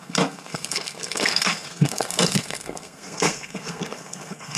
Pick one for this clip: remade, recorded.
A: remade